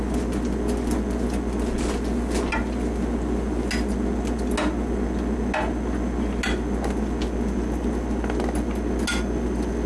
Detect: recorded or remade recorded